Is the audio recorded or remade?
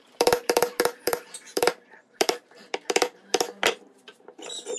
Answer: remade